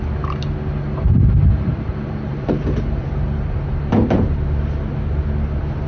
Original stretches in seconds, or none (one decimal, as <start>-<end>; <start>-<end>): 0.0-1.7; 4.0-5.9